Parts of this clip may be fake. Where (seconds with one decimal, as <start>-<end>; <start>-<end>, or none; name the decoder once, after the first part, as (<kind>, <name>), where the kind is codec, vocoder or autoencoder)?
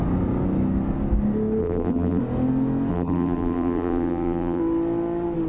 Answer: 1.6-2.2 (vocoder, BigVGAN v2); 2.9-4.6